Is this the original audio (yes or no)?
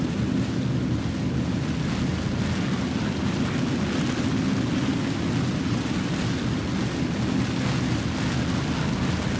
yes